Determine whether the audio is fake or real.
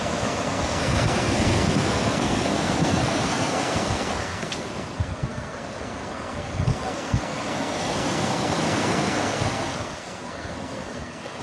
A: fake